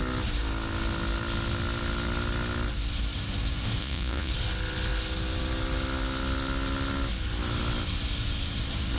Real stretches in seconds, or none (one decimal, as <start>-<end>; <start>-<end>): 0.0-3.8; 4.3-9.0